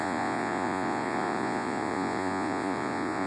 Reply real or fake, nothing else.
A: fake